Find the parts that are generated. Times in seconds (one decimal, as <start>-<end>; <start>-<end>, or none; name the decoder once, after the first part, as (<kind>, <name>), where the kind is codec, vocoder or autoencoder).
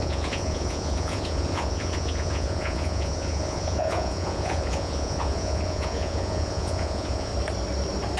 0.0-7.3 (vocoder, Vocos)